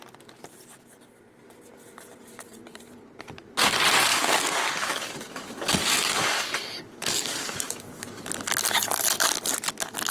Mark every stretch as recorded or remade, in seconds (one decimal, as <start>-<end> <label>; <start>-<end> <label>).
0.0-4.1 recorded; 4.1-8.3 remade; 8.3-10.1 recorded